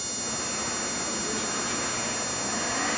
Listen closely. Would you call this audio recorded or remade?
recorded